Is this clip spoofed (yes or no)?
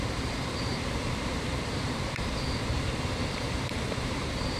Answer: yes